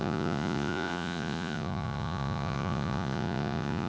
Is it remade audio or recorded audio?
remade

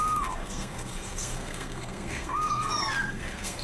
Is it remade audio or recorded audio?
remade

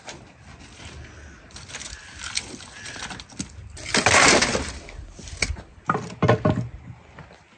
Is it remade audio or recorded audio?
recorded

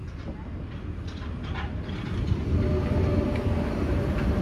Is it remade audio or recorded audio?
recorded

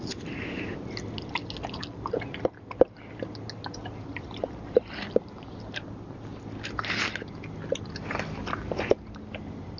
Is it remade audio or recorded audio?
recorded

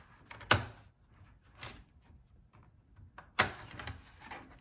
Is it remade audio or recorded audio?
recorded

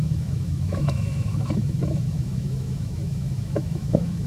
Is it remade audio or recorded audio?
remade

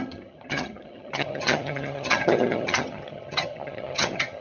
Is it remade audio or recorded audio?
remade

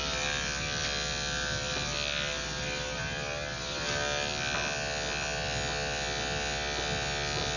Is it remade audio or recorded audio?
recorded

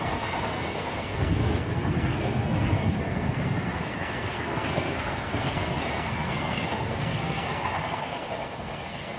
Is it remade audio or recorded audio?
remade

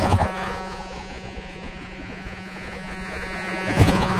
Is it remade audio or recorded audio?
remade